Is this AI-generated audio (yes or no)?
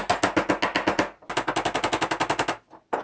no